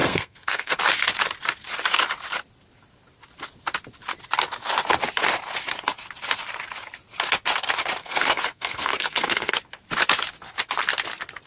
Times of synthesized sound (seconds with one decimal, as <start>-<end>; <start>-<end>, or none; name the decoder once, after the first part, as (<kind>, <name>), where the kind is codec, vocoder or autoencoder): 0.0-0.8 (codec, SNAC); 8.0-9.5